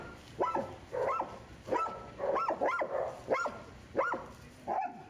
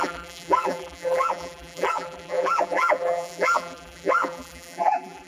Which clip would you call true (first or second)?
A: first